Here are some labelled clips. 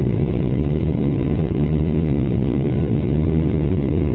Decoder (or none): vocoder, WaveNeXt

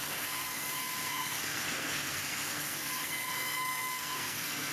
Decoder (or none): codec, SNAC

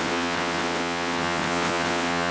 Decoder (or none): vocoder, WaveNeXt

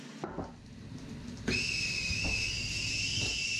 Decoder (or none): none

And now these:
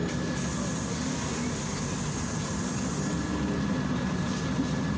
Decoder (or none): none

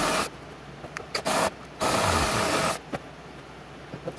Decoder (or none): none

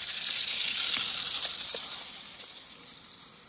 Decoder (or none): none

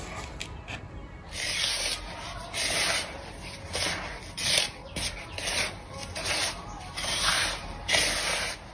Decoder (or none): none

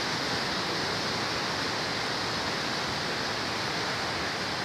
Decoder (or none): none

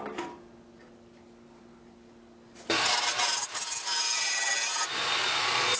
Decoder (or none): none